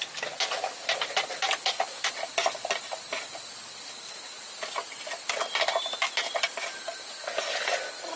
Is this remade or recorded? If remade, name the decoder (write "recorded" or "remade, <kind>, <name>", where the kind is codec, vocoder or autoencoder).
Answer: recorded